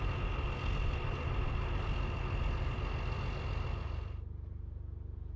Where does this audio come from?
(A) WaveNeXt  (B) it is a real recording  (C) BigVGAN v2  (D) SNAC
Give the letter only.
B